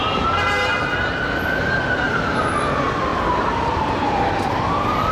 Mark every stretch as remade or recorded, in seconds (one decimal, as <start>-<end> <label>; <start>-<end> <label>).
0.0-3.1 recorded; 3.1-3.9 remade; 3.9-5.1 recorded

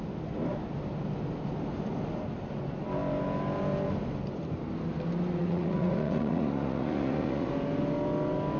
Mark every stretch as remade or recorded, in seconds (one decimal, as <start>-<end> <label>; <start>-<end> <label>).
0.0-5.4 recorded; 5.4-7.5 remade; 7.5-8.6 recorded

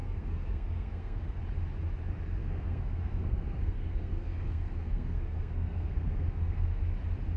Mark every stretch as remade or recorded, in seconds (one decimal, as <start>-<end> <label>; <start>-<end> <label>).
0.0-1.4 remade; 1.4-2.4 recorded; 2.4-6.8 remade; 6.8-7.4 recorded

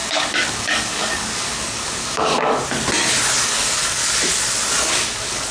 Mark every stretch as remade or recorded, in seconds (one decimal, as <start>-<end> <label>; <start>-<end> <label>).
0.0-2.6 remade; 2.6-3.4 recorded; 3.4-4.0 remade; 4.0-4.8 recorded; 4.8-5.5 remade